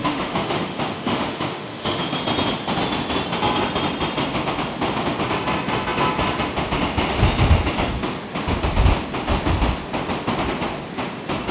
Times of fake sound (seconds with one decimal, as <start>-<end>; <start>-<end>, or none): 0.0-2.0